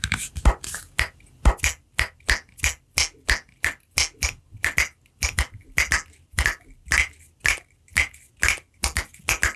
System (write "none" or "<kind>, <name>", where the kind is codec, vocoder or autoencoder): none